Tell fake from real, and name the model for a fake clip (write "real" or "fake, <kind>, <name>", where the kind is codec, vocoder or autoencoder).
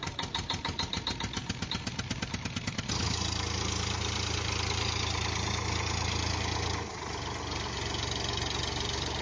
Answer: real